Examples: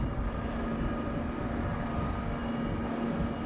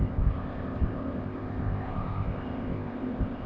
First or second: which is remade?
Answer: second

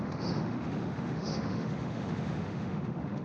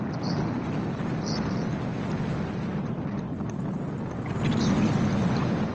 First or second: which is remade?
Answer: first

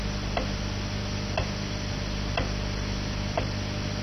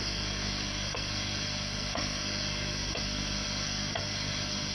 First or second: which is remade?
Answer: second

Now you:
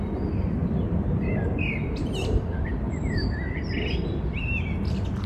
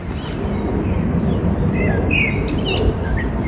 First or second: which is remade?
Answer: first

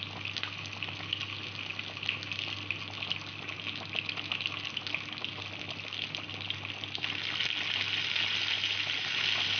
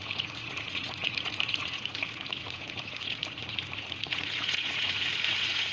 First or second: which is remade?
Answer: second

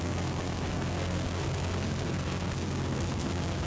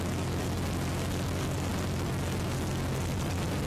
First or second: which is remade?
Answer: first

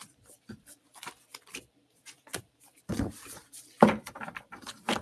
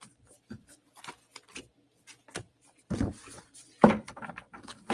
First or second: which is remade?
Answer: first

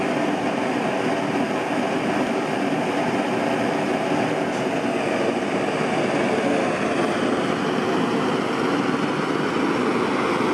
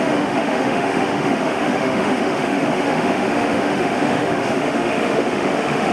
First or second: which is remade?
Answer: second